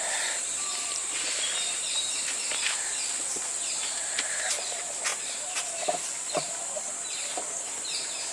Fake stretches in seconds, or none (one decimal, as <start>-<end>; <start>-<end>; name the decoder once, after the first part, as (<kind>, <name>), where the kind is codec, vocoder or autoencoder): 0.0-8.3 (vocoder, BigVGAN v2)